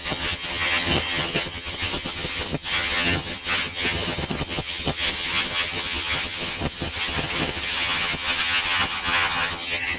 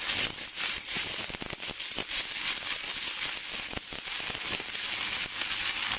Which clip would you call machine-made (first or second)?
first